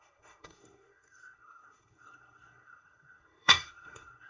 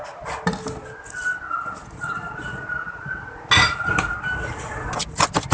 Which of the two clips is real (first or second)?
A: second